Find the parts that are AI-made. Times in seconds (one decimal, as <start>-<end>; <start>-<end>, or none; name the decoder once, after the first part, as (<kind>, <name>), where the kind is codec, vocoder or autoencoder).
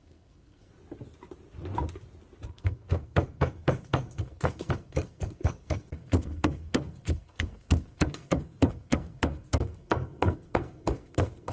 0.0-0.7 (codec, SNAC); 2.5-11.5